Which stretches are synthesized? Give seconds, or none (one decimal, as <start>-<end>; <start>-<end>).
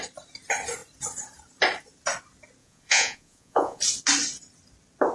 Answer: 2.6-3.8